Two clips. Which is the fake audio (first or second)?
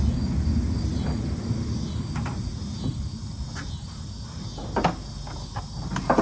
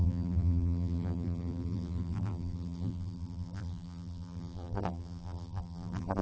second